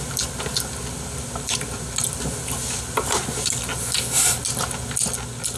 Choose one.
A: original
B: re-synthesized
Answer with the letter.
A